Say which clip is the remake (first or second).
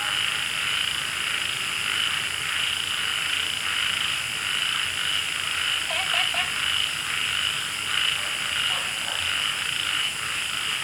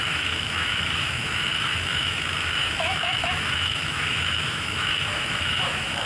second